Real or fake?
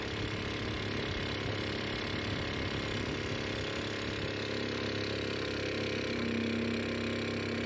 real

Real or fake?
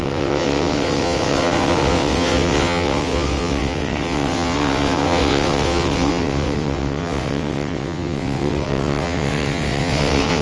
fake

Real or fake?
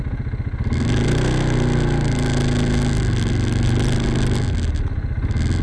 real